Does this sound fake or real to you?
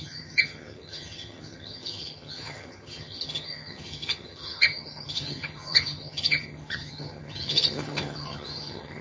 fake